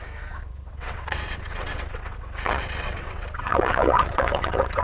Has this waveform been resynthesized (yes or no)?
yes